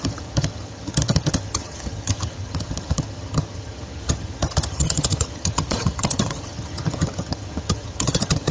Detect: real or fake fake